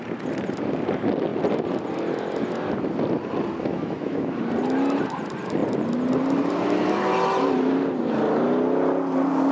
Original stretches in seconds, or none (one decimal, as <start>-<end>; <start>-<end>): 0.0-3.6; 4.4-9.5